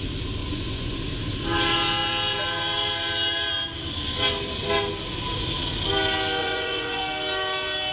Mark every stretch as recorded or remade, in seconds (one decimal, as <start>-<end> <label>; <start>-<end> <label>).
0.0-0.4 recorded; 0.4-1.0 remade; 1.0-6.4 recorded; 6.4-7.0 remade; 7.0-7.9 recorded